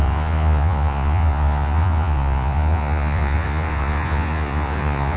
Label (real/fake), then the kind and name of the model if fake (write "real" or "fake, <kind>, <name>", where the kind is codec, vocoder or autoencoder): fake, vocoder, Vocos